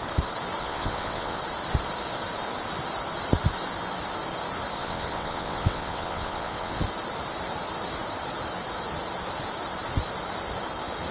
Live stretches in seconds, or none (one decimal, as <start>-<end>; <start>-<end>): 0.0-0.6; 1.4-4.8; 6.8-11.1